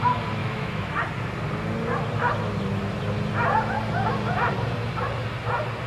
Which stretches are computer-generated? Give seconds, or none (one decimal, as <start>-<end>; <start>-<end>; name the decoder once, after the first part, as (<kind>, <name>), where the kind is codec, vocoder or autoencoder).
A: 0.4-1.0 (autoencoder, DAC-VAE)